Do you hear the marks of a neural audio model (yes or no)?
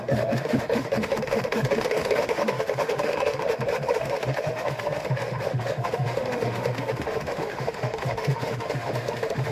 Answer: yes